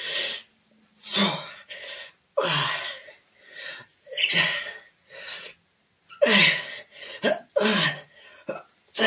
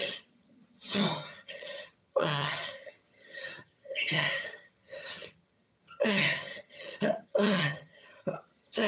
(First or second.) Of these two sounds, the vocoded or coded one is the second